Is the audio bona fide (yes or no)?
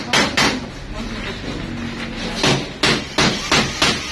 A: yes